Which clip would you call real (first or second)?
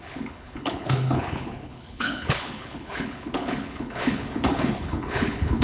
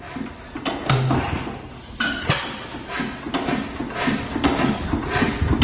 second